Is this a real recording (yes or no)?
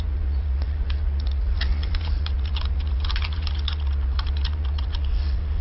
no